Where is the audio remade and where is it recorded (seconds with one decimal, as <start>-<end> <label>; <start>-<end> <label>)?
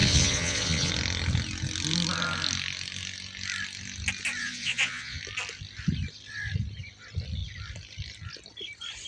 0.0-0.9 remade; 0.9-4.4 recorded; 4.4-5.2 remade; 5.2-9.1 recorded